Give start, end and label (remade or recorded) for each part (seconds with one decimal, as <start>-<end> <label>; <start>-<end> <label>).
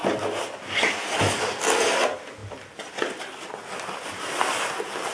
0.0-5.1 recorded